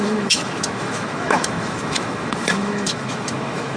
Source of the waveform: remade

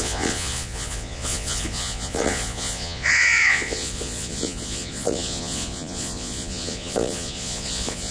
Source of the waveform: remade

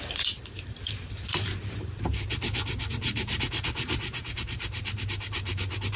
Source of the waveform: remade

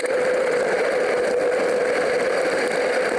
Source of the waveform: recorded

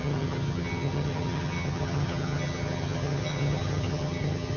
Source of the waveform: remade